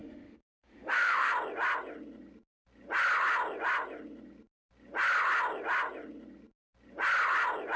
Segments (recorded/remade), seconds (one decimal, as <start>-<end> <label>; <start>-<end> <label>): 0.0-1.3 remade; 1.3-7.8 recorded